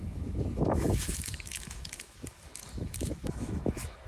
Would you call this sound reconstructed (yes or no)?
yes